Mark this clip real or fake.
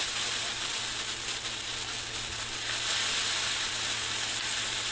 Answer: real